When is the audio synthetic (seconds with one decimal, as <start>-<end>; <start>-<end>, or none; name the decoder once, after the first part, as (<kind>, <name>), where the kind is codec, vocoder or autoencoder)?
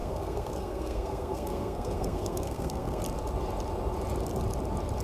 0.0-3.0 (codec, SNAC)